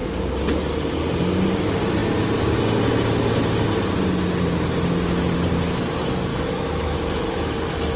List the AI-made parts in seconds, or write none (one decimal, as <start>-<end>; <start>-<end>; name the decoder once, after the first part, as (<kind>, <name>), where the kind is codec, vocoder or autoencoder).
6.3-8.0 (autoencoder, DAC-VAE)